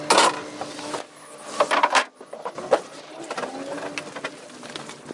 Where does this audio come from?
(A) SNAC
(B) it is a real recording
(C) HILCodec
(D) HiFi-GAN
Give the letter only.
B